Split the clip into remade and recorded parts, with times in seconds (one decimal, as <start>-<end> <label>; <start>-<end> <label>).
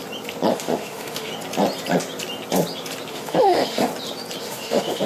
0.0-0.5 recorded; 0.5-1.3 remade; 1.3-3.1 recorded; 3.1-3.9 remade; 3.9-4.4 recorded; 4.4-5.1 remade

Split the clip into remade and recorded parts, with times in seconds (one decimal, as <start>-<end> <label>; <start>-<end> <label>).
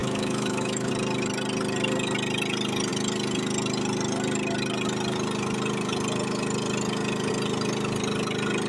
0.0-0.9 remade; 0.9-8.7 recorded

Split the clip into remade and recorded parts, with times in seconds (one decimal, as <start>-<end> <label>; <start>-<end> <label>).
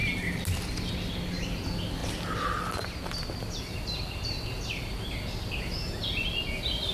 0.0-6.9 recorded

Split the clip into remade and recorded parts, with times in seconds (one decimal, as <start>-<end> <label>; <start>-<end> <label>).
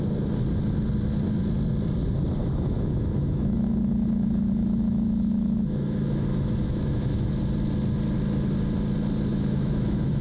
0.0-2.4 recorded; 2.4-7.4 remade; 7.4-9.3 recorded; 9.3-10.2 remade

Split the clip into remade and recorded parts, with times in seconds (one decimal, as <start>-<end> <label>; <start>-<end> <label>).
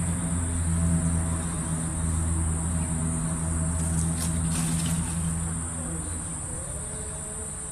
0.0-7.7 recorded